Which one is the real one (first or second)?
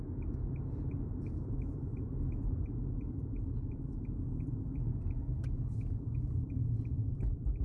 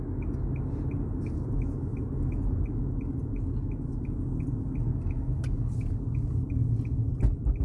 second